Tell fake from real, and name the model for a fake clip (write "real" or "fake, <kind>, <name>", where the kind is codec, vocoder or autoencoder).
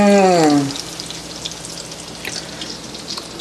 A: real